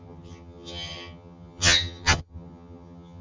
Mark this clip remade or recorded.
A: remade